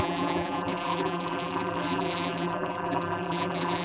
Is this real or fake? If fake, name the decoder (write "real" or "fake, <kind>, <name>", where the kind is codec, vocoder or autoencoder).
fake, vocoder, BigVGAN v2